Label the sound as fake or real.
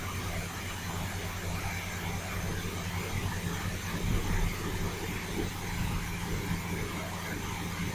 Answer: real